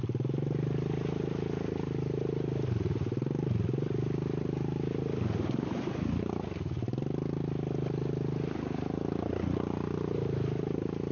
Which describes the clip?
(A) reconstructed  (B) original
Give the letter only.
B